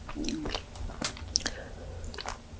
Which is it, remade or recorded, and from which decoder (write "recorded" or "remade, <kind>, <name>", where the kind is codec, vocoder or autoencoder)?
recorded